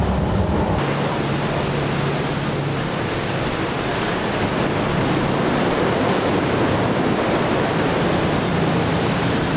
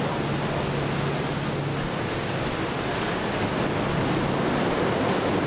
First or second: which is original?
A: second